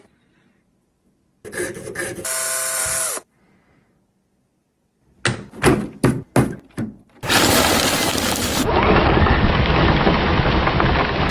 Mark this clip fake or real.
real